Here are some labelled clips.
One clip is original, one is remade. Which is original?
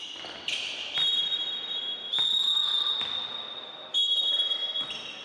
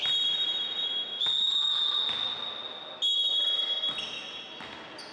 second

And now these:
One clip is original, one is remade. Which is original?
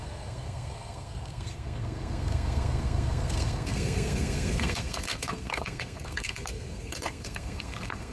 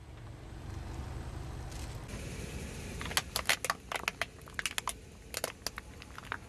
second